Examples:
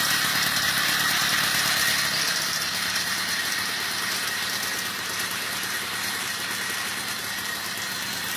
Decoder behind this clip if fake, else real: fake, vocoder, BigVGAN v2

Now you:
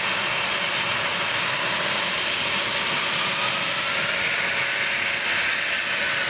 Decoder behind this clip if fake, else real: real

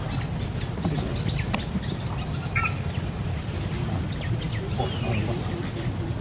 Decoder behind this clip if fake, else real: real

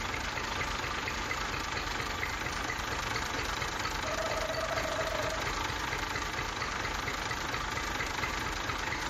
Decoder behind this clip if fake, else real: fake, vocoder, BigVGAN v2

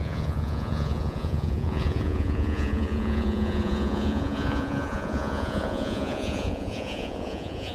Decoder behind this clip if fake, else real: fake, vocoder, Vocos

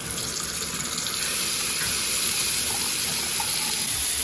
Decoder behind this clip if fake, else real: real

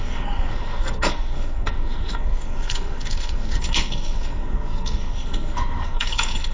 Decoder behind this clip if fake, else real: fake, codec, SNAC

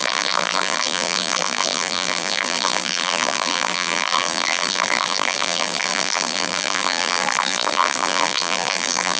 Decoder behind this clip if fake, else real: fake, vocoder, BigVGAN v2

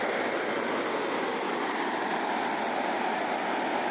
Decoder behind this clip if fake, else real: real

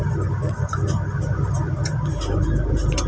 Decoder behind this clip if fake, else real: real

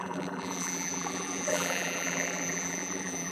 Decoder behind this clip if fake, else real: fake, vocoder, BigVGAN v2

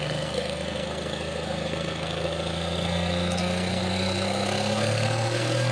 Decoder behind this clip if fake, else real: fake, codec, SNAC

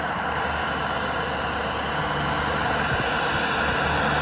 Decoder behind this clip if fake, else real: real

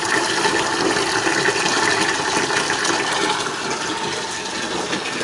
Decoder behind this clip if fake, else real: real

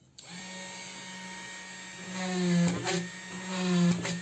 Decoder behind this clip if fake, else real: real